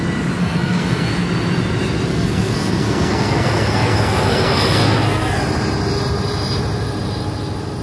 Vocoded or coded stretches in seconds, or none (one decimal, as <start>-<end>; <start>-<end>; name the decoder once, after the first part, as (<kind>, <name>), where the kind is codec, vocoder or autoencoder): 0.4-1.1 (codec, SNAC); 2.1-5.4